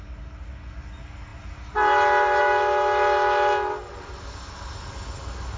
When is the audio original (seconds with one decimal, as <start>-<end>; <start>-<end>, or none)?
0.0-5.6